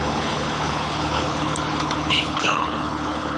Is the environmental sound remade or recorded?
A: remade